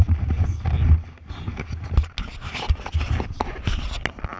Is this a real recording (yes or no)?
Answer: yes